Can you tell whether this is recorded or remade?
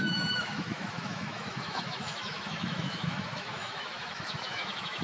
remade